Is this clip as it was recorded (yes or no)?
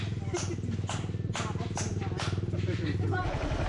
yes